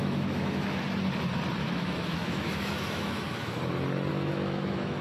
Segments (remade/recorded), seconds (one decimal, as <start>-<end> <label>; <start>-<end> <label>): 0.0-0.8 remade; 0.8-1.6 recorded; 1.6-3.6 remade; 3.6-4.1 recorded; 4.1-5.0 remade